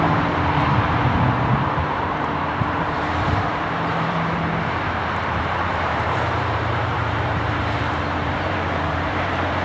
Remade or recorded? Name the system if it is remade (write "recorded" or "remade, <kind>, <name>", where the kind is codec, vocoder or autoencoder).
remade, vocoder, BigVGAN v2